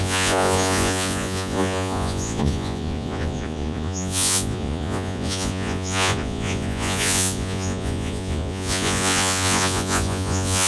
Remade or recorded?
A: remade